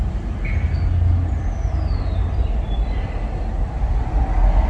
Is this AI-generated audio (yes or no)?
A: no